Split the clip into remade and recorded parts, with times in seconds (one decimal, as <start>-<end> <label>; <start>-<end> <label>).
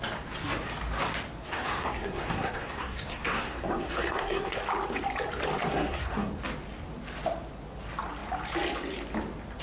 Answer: 0.0-1.4 recorded; 1.4-4.6 remade; 4.6-5.7 recorded; 5.7-6.3 remade; 6.3-9.6 recorded